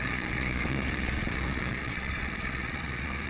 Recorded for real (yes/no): no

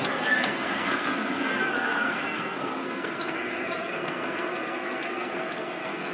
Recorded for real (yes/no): no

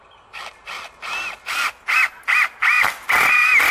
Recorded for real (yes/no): yes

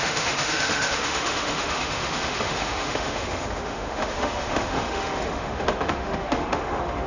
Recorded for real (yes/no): no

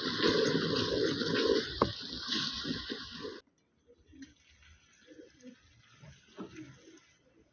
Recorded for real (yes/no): yes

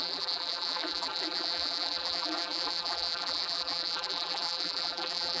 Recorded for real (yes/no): no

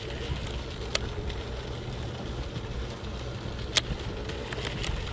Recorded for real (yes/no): yes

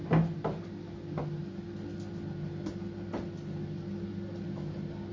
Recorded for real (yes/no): yes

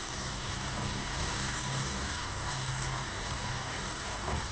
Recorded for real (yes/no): no